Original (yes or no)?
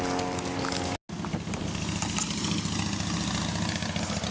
yes